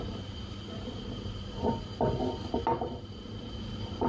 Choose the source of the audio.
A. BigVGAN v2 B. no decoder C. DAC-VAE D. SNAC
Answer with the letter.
B